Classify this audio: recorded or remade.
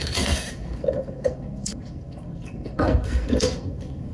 remade